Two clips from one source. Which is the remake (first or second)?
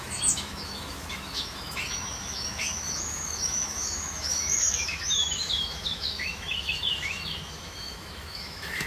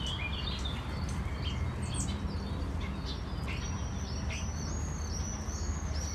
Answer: first